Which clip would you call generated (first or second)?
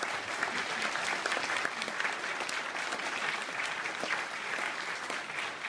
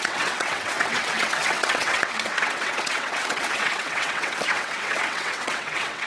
second